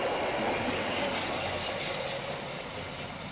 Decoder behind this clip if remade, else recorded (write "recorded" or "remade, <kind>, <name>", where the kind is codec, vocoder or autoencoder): recorded